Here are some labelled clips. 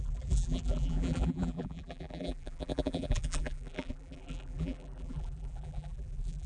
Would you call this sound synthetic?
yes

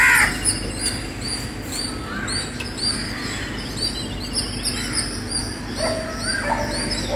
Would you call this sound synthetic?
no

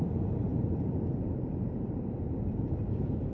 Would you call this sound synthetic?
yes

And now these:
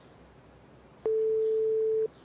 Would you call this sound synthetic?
no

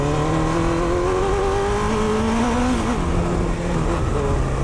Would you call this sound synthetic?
no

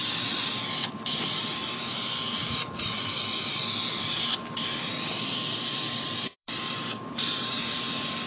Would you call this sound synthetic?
yes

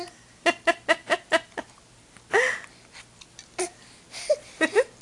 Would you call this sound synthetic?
no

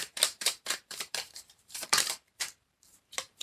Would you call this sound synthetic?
yes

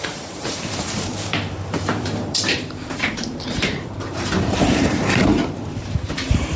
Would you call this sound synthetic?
yes